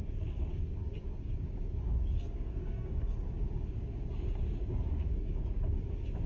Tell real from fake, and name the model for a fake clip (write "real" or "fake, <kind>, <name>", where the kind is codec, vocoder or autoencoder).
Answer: fake, codec, DAC